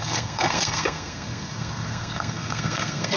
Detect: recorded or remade remade